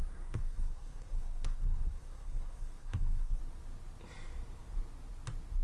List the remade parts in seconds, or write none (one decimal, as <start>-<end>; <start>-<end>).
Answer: 0.0-3.4